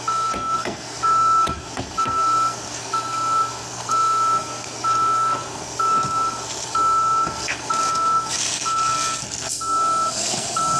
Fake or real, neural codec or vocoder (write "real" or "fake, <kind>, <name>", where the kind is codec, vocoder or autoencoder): fake, codec, SNAC